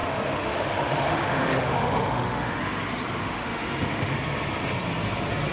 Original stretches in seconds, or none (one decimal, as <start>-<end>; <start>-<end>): 2.6-3.2; 4.1-5.5